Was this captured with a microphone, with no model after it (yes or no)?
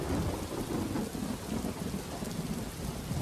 yes